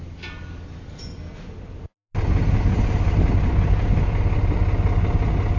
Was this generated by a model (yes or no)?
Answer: no